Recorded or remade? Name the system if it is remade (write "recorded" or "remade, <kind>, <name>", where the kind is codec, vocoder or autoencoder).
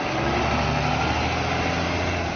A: recorded